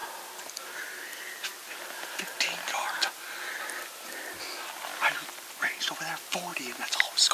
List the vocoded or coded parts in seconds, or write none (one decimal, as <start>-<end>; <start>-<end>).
none